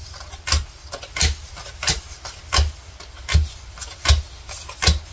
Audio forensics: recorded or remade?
recorded